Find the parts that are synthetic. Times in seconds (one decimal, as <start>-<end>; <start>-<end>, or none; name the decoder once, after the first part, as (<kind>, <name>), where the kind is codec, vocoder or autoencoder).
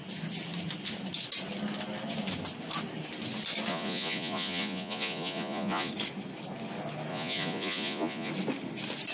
3.7-5.9 (vocoder, Vocos); 7.1-8.3